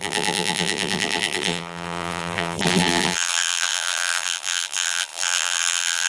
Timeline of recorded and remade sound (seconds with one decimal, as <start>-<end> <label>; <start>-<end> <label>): 0.0-6.1 remade

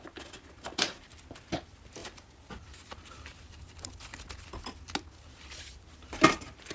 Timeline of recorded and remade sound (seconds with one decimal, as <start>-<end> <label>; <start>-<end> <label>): 0.0-6.7 recorded